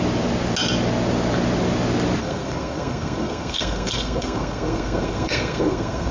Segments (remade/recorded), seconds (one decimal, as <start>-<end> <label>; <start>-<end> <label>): 0.0-2.2 recorded; 2.2-6.1 remade